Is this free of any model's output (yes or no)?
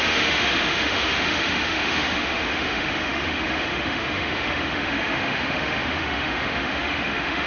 no